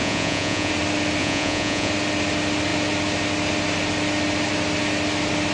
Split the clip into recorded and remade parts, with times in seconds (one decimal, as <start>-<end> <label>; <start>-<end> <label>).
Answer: 0.0-0.7 remade; 0.7-1.2 recorded; 1.2-1.9 remade; 1.9-5.5 recorded